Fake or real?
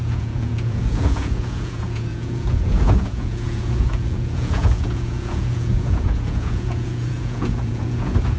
fake